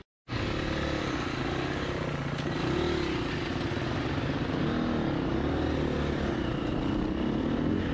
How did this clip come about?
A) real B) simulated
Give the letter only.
A